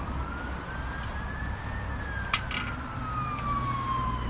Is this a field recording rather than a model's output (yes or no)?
yes